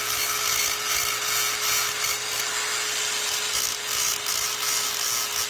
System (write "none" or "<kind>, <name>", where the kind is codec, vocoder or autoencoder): none